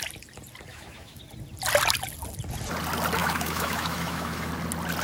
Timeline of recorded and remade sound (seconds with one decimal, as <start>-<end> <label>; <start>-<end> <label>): 0.0-0.7 recorded; 0.7-1.2 remade; 1.2-3.2 recorded; 3.2-4.5 remade; 4.5-5.0 recorded